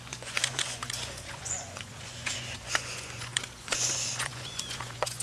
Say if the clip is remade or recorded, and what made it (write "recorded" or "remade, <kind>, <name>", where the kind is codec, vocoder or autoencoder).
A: remade, vocoder, Vocos